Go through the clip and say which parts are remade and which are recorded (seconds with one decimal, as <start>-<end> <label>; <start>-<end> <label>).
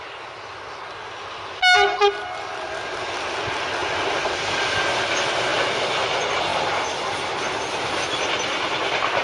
0.0-6.5 recorded; 6.5-7.9 remade; 7.9-9.2 recorded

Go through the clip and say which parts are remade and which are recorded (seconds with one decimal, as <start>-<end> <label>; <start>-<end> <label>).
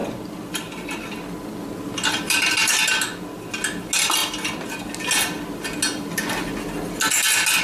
0.0-7.6 recorded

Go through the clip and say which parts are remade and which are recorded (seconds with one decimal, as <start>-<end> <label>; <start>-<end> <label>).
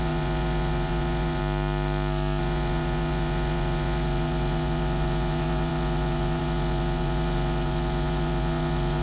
0.0-1.4 remade; 1.4-2.4 recorded; 2.4-9.0 remade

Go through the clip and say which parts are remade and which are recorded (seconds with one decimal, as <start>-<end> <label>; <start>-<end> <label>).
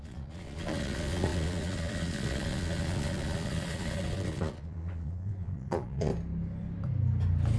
0.0-6.1 remade; 6.1-7.6 recorded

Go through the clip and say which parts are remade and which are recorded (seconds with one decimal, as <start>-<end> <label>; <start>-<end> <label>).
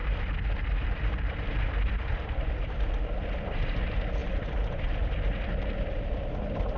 0.0-6.8 recorded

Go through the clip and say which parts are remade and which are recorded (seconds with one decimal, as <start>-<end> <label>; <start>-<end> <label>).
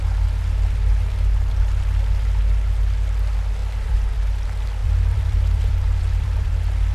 0.0-3.6 recorded; 3.6-4.2 remade; 4.2-4.8 recorded; 4.8-6.5 remade; 6.5-6.9 recorded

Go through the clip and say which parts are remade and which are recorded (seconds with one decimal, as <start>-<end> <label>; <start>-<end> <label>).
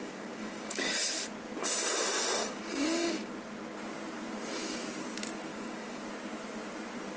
0.0-0.9 remade; 0.9-2.4 recorded; 2.4-3.3 remade; 3.3-5.5 recorded; 5.5-6.0 remade; 6.0-7.2 recorded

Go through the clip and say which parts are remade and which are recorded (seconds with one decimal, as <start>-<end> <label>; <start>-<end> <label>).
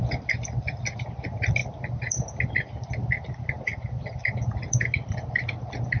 0.0-6.0 recorded